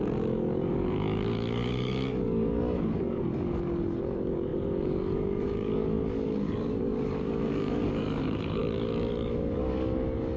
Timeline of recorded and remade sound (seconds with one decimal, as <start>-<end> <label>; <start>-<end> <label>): 0.0-10.4 remade